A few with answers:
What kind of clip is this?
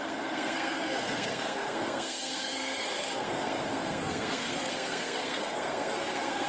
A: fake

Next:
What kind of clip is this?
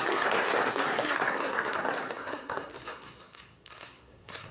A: fake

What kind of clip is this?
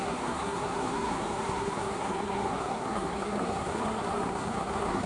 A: fake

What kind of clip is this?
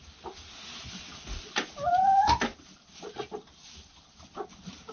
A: real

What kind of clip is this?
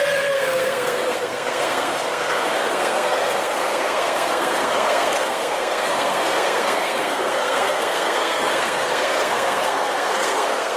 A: fake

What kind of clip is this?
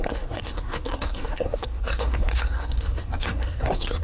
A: fake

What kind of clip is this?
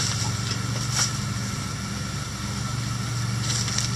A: real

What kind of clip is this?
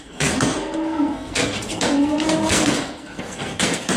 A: fake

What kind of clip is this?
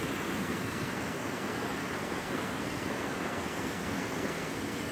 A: fake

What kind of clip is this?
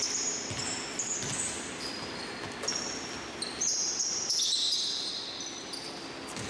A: real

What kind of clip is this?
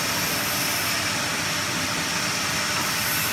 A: real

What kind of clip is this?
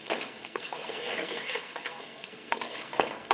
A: fake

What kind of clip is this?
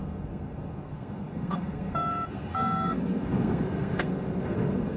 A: fake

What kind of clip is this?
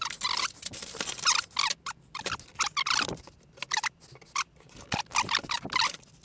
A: real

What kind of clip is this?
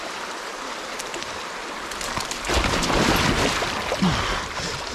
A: real